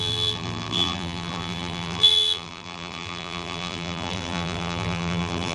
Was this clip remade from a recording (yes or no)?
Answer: yes